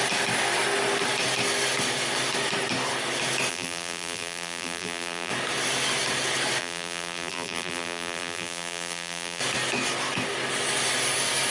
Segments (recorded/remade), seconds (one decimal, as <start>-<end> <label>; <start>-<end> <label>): 0.0-3.5 recorded; 3.5-5.3 remade; 5.3-6.6 recorded; 6.6-9.4 remade; 9.4-11.5 recorded